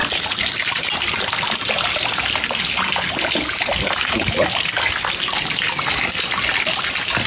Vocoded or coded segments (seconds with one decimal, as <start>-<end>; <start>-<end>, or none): none